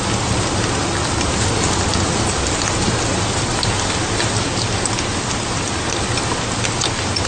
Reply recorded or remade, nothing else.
recorded